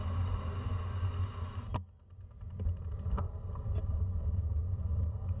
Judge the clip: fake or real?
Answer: real